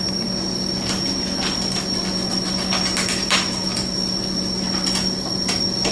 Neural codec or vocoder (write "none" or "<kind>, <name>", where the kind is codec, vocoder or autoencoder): none